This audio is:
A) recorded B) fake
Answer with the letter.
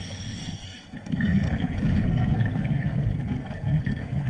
B